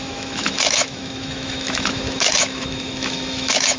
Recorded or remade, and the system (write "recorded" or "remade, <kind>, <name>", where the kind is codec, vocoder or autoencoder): remade, autoencoder, DAC-VAE